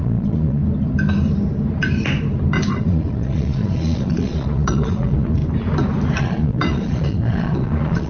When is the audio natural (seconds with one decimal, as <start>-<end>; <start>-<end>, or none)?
0.6-2.7; 5.4-6.2

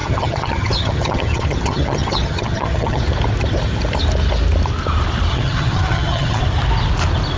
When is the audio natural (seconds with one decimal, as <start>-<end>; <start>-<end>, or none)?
3.0-5.3; 6.4-7.4

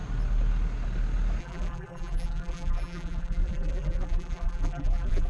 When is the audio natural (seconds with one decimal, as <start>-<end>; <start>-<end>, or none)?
0.0-1.4